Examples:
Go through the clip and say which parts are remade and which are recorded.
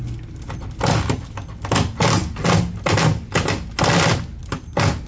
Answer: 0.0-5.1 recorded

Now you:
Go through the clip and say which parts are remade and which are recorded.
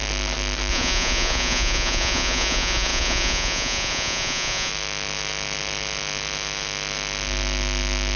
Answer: 0.0-0.7 recorded; 0.7-4.7 remade; 4.7-8.2 recorded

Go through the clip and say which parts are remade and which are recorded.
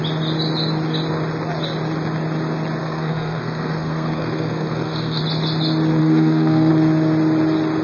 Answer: 0.0-2.8 recorded; 2.8-5.2 remade; 5.2-6.0 recorded; 6.0-6.7 remade; 6.7-7.8 recorded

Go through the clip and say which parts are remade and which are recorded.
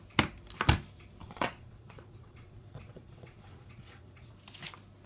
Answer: 0.0-1.2 recorded; 1.2-4.3 remade; 4.3-5.1 recorded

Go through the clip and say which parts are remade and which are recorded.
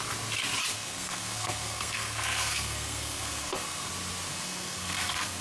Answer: 0.0-0.7 recorded; 0.7-3.9 remade; 3.9-4.3 recorded; 4.3-5.4 remade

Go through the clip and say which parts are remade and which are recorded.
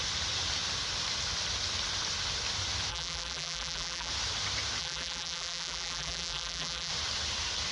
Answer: 0.0-2.9 recorded; 2.9-4.1 remade; 4.1-4.8 recorded; 4.8-6.9 remade; 6.9-7.7 recorded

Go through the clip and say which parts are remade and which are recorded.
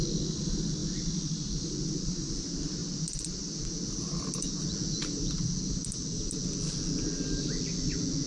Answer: 0.0-8.3 recorded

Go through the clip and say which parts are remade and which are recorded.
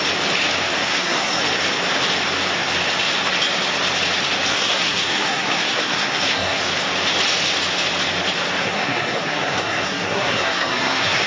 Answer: 0.0-0.9 recorded; 0.9-1.4 remade; 1.4-4.5 recorded; 4.5-6.6 remade; 6.6-8.6 recorded; 8.6-11.3 remade